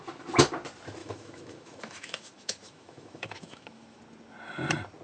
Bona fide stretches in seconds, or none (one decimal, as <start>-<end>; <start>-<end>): 0.0-1.0; 4.0-5.0